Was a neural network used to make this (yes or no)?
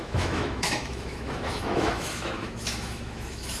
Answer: yes